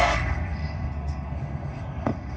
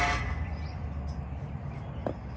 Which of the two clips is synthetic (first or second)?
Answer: first